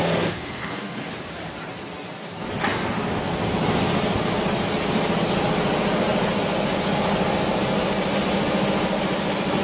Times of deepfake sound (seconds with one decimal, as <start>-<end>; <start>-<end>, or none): 0.0-1.1